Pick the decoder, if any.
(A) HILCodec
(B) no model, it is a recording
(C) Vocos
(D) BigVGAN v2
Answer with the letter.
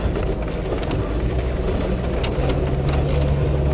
B